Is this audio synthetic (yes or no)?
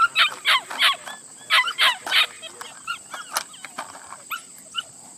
no